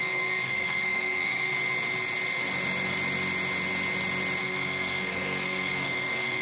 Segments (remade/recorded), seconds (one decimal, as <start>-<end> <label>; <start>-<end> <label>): 0.0-1.5 remade; 1.5-4.4 recorded; 4.4-6.4 remade